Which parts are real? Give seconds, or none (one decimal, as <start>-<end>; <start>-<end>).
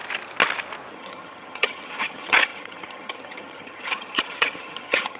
0.0-0.9